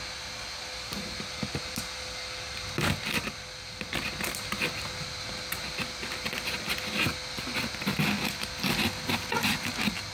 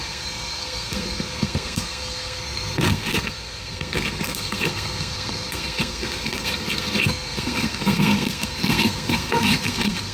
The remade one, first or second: second